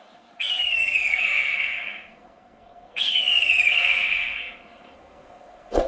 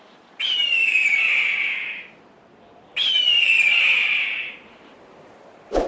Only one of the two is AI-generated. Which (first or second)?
first